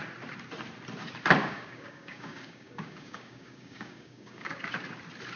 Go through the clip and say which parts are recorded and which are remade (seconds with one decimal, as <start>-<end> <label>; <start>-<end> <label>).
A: 0.0-1.4 recorded; 1.4-4.6 remade; 4.6-5.4 recorded